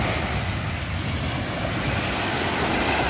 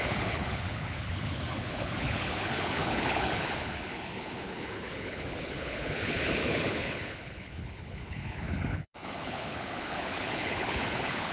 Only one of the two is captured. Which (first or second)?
first